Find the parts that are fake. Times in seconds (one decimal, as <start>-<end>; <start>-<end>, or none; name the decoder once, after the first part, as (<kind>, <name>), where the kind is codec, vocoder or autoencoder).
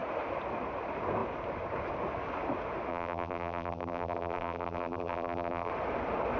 2.9-5.7 (vocoder, BigVGAN v2)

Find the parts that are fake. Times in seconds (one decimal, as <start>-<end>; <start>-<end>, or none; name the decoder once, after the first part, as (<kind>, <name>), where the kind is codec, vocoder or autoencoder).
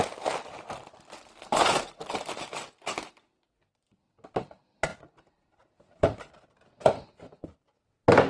4.9-6.3 (vocoder, BigVGAN v2)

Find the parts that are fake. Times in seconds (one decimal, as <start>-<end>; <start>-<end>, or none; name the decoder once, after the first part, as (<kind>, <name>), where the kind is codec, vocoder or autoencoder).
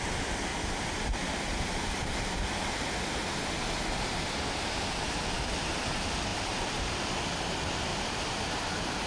0.5-2.1 (vocoder, BigVGAN v2); 6.3-7.1; 7.9-9.1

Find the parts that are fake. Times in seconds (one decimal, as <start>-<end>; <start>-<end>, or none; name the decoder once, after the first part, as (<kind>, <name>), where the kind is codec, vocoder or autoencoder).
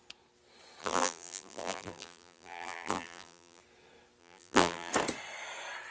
0.8-3.6 (vocoder, BigVGAN v2); 4.2-4.9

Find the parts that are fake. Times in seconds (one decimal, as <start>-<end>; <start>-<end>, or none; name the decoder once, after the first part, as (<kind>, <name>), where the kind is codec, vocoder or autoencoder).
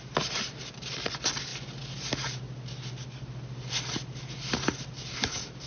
none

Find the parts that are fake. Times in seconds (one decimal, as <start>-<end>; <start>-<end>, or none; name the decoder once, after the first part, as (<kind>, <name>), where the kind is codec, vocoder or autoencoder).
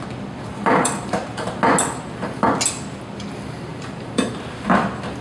0.5-1.5 (vocoder, BigVGAN v2); 3.7-4.3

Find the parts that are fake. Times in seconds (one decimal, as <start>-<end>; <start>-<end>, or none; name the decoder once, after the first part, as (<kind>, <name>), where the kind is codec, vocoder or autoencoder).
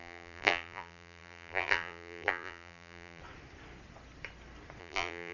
0.0-3.2 (vocoder, BigVGAN v2); 4.8-5.3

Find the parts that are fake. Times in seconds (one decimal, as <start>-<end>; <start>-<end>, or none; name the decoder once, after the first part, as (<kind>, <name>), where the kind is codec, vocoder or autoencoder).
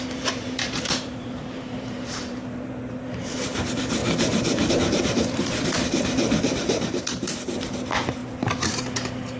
0.0-4.0 (vocoder, BigVGAN v2); 4.7-8.2